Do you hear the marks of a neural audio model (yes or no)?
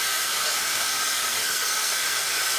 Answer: yes